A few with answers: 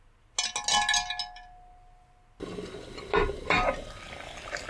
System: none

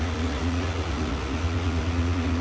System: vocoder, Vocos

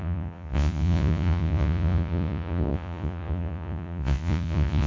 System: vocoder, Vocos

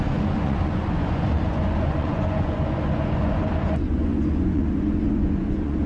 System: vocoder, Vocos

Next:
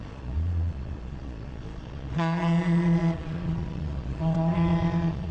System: vocoder, Vocos